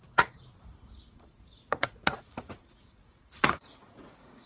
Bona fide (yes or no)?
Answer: no